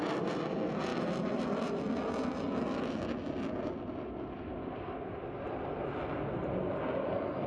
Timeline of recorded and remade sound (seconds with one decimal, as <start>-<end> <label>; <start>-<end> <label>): 0.0-7.5 recorded